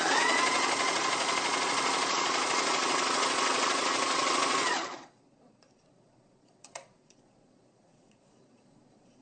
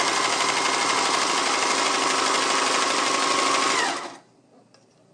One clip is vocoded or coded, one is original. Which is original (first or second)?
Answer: second